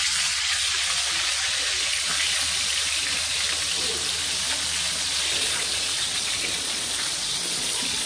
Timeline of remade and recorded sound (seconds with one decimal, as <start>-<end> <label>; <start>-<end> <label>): 0.0-2.1 remade; 2.1-5.4 recorded; 5.4-8.1 remade